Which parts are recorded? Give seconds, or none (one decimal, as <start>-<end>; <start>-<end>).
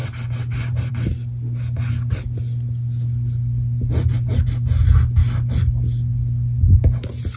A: 0.0-7.4